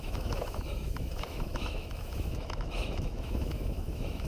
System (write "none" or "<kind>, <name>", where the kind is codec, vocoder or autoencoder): autoencoder, DAC-VAE